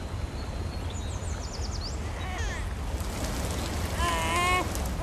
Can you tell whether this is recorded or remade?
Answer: recorded